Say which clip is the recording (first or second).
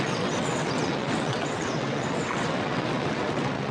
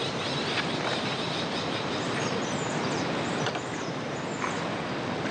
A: second